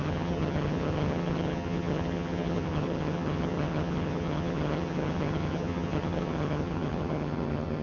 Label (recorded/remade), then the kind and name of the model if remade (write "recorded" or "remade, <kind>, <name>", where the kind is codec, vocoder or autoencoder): remade, vocoder, HiFi-GAN